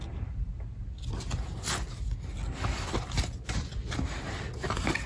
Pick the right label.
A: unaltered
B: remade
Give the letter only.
A